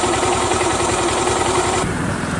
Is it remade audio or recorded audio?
remade